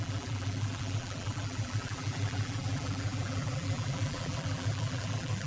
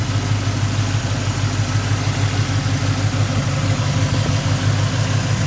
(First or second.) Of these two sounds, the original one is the second